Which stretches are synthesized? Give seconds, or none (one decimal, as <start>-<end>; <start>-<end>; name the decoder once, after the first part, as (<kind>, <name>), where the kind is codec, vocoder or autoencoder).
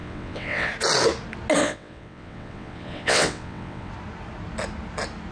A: 0.0-0.7 (vocoder, WaveNeXt); 1.6-3.9